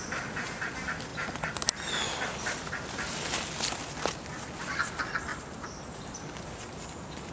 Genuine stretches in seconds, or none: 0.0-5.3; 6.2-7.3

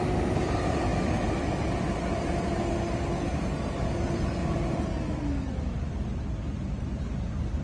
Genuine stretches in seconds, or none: 0.0-4.4; 4.9-7.6

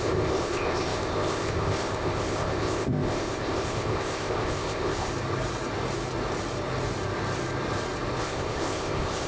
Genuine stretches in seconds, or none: 5.1-8.2

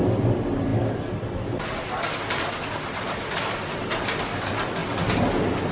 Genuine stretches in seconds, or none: 0.0-5.7